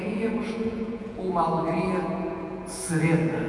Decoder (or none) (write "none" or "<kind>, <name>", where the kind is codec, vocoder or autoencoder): vocoder, Vocos